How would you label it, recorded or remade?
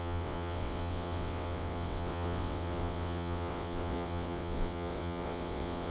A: remade